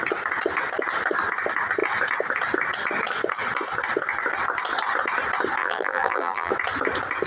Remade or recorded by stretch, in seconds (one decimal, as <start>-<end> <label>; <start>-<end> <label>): 0.0-5.6 recorded; 5.6-6.5 remade; 6.5-7.3 recorded